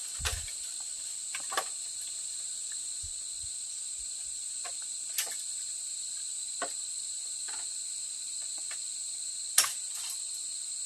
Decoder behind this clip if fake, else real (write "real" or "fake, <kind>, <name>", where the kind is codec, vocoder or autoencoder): real